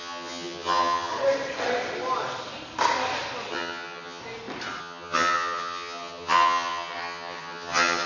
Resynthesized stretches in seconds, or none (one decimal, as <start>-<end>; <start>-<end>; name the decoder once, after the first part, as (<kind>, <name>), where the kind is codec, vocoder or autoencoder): 0.0-1.1 (vocoder, HiFi-GAN); 3.5-4.2; 4.8-8.1